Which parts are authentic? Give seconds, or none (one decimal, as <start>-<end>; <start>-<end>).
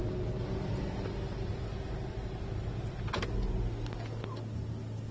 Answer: 0.0-5.1